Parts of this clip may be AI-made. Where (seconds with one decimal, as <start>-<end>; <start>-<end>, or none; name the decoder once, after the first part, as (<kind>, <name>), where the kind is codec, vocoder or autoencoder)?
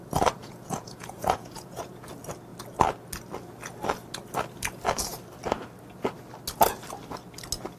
0.4-2.1 (vocoder, Vocos)